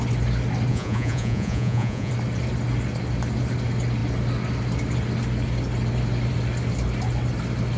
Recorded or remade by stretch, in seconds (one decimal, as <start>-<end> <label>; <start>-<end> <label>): 0.0-0.7 recorded; 0.7-2.1 remade; 2.1-7.8 recorded